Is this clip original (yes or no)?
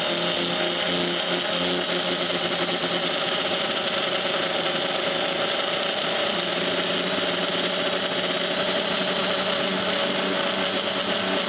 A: yes